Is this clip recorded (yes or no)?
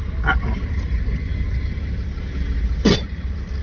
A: yes